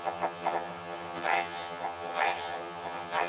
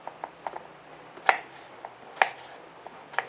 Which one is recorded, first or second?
second